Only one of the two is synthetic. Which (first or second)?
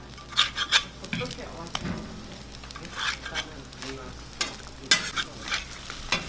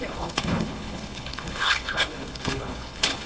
second